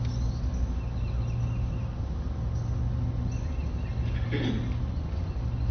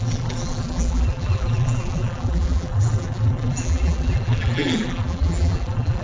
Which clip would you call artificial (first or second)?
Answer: second